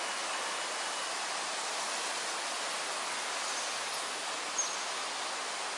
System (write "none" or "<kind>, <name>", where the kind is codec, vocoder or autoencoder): none